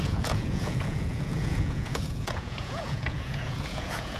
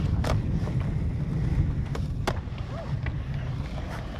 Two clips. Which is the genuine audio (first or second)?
second